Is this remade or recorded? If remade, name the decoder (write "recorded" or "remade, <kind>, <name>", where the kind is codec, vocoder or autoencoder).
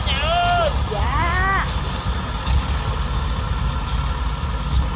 recorded